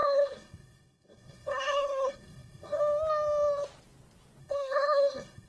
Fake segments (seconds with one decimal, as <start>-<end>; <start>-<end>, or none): 0.0-2.8; 4.4-5.5